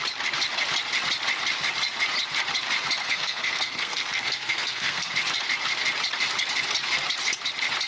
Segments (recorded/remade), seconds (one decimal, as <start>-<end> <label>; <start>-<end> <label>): 0.0-3.0 recorded; 3.0-5.1 remade; 5.1-7.9 recorded